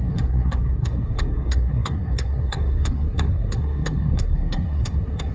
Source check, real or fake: fake